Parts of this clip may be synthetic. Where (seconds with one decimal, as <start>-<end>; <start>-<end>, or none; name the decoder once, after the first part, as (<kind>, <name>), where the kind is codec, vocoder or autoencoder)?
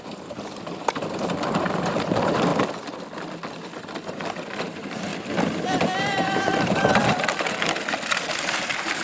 0.0-2.5 (vocoder, BigVGAN v2); 4.6-5.1; 6.0-6.8; 8.4-9.0